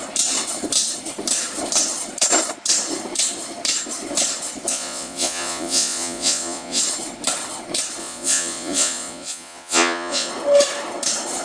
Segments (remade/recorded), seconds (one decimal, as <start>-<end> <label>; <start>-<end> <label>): 0.0-4.7 recorded; 4.7-6.8 remade; 6.8-8.0 recorded; 8.0-10.3 remade; 10.3-11.4 recorded